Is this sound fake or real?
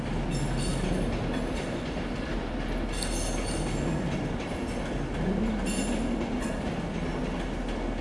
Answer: real